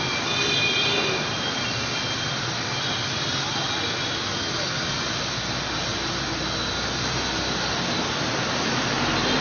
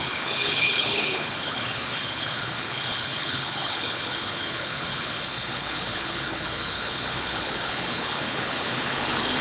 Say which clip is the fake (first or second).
second